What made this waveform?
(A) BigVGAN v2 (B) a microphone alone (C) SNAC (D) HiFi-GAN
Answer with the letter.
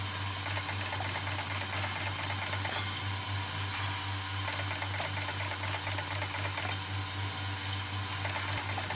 B